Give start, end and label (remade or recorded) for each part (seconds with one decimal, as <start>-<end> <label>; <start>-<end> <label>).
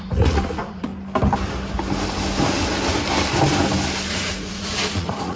0.0-0.9 remade; 0.9-4.1 recorded; 4.1-5.4 remade